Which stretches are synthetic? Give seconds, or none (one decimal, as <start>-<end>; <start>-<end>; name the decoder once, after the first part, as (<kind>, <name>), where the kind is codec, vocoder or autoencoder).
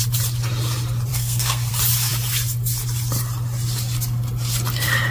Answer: 1.1-1.7 (codec, SNAC)